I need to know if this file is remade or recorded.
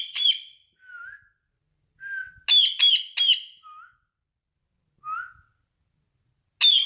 recorded